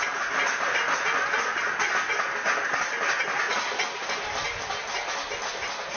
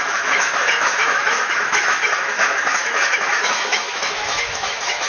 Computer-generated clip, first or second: second